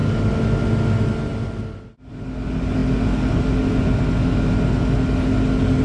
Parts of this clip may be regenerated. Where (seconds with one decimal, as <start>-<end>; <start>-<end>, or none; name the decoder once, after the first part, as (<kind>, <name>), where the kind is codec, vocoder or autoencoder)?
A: none